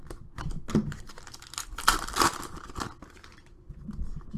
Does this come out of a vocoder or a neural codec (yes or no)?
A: no